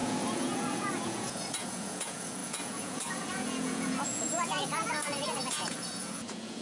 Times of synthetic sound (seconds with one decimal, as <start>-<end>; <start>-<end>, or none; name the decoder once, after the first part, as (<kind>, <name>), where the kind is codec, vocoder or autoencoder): 0.0-6.6 (vocoder, Vocos)